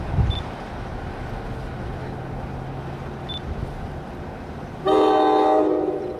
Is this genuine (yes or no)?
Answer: yes